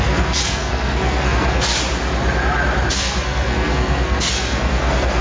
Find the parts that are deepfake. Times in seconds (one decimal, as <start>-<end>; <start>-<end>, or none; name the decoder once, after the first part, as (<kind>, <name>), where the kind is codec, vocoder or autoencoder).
0.0-1.7 (codec, SNAC); 2.9-5.2

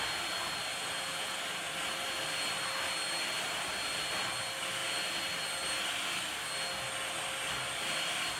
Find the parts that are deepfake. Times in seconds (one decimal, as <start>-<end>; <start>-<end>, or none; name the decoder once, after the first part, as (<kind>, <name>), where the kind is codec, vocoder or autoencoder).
0.7-1.4 (vocoder, Vocos)

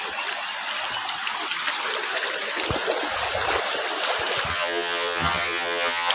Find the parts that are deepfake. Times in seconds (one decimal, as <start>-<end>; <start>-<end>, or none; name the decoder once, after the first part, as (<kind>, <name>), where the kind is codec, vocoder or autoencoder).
4.5-6.1 (vocoder, HiFi-GAN)

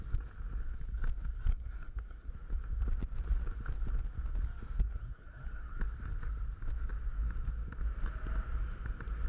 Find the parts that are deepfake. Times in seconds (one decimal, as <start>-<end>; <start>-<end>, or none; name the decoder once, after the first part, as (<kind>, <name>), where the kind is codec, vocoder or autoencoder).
1.5-2.3 (codec, SNAC); 4.8-5.8

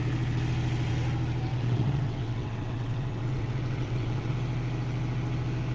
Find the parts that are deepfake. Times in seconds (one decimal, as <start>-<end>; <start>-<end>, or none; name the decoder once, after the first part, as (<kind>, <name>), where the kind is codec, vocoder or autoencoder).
1.5-4.3 (vocoder, WaveNeXt)